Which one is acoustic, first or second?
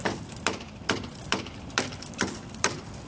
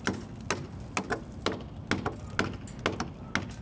second